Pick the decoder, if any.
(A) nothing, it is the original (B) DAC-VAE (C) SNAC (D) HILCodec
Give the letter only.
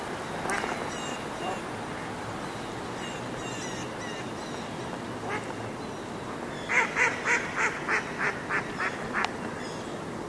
A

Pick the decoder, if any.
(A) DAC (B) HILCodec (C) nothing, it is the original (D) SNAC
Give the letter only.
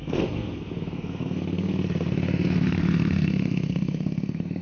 D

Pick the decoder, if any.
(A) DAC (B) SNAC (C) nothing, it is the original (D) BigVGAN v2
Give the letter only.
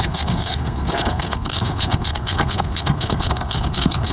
B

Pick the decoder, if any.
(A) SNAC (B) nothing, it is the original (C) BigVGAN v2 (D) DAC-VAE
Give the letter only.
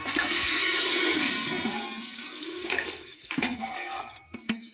A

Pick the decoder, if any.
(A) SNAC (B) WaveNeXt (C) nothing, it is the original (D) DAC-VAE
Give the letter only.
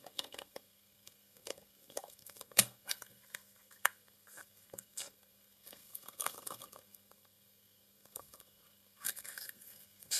A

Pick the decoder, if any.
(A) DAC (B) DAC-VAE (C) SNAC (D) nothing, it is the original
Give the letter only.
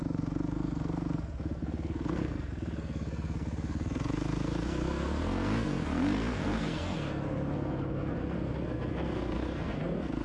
C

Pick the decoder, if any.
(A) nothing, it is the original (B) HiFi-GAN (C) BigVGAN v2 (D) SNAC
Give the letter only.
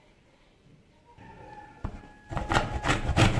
A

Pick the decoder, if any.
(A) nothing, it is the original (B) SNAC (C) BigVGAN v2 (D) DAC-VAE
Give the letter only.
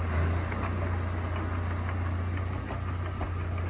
A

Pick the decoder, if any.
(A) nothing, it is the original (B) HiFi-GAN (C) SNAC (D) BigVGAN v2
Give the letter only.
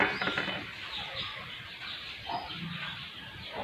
A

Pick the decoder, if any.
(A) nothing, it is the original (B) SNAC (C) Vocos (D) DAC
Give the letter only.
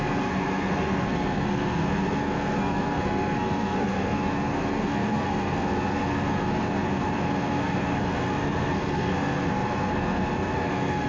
B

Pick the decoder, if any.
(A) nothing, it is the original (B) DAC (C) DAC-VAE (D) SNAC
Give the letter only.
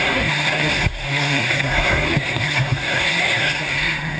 D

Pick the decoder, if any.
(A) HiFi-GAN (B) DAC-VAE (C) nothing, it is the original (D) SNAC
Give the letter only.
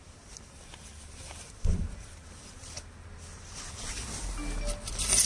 C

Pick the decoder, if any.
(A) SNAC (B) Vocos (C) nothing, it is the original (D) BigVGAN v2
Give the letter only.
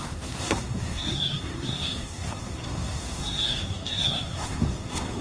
A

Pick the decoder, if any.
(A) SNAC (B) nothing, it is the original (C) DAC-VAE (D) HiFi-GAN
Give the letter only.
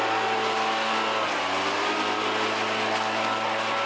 B